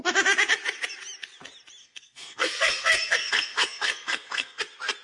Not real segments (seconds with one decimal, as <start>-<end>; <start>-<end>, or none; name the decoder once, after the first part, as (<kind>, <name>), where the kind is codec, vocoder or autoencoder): 1.8-4.6 (codec, SNAC)

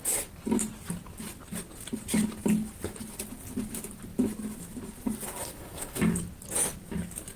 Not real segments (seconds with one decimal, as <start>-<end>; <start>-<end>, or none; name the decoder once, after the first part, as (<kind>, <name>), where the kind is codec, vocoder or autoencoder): 5.4-6.0 (codec, SNAC)

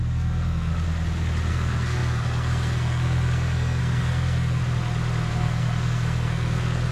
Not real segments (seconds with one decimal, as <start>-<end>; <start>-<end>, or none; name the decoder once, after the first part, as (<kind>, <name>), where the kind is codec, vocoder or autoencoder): 0.0-0.7 (codec, SNAC); 1.5-4.6; 5.3-6.9